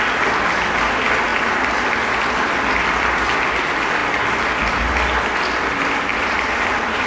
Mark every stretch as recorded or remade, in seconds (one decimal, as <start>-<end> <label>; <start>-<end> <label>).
0.0-6.1 recorded; 6.1-7.1 remade